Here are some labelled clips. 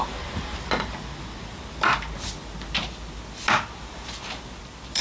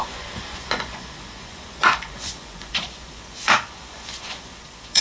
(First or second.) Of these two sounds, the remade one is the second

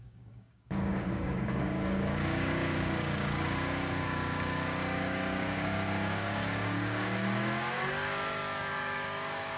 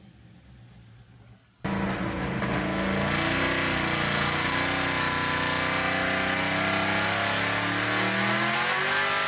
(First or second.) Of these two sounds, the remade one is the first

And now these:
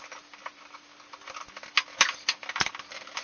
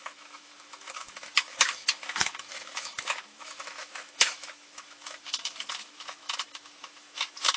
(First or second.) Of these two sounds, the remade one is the second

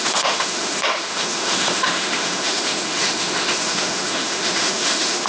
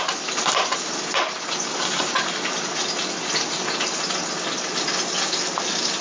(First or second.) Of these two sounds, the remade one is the first